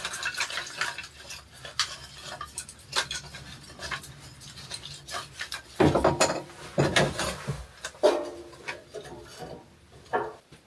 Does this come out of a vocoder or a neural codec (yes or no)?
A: no